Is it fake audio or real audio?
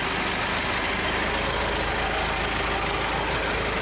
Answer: real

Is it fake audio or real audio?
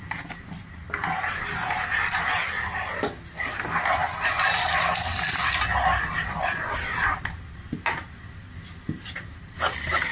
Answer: real